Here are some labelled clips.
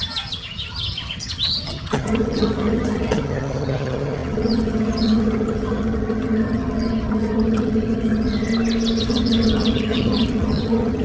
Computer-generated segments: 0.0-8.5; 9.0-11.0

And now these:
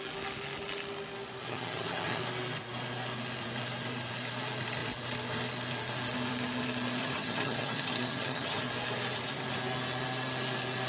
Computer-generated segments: 1.4-2.2; 7.0-8.6

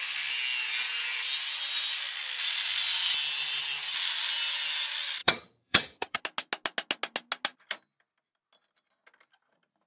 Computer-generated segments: 5.2-6.2

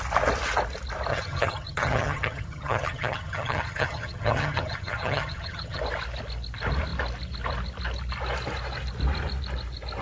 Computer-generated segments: 1.1-5.8

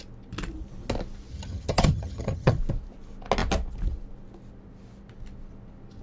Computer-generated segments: 1.3-2.6

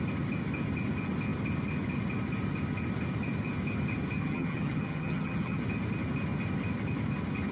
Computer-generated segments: 4.2-5.6

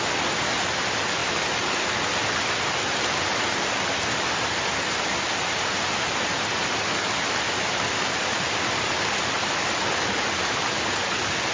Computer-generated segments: none